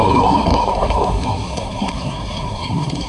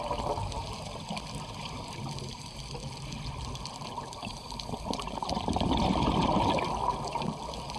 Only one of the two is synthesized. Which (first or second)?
first